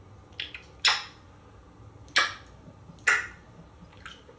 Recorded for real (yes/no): yes